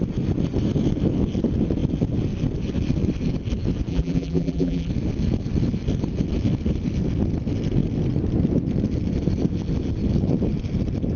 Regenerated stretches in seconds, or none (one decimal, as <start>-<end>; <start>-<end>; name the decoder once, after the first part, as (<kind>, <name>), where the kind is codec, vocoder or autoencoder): 3.9-4.9 (vocoder, BigVGAN v2)